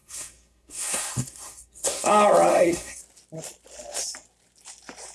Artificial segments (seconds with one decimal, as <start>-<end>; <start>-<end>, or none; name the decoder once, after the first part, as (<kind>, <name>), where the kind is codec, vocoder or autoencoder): 0.0-2.1 (codec, SNAC); 2.5-3.0